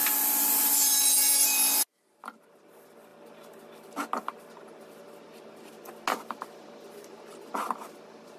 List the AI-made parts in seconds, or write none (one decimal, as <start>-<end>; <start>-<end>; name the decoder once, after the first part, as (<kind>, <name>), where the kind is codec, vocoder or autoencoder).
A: none